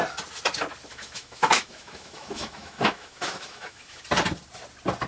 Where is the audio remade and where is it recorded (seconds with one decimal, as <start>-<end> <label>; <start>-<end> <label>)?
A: 0.0-0.9 recorded; 0.9-4.0 remade; 4.0-5.1 recorded